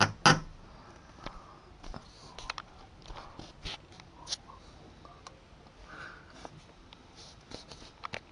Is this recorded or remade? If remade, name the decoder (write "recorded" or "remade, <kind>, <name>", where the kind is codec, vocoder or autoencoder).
recorded